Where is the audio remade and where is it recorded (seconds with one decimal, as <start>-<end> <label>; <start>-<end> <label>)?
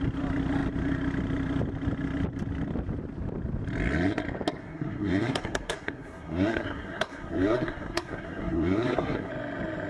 0.0-4.6 recorded; 4.6-9.3 remade; 9.3-9.9 recorded